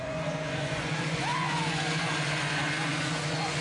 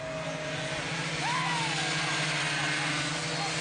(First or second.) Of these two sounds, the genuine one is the second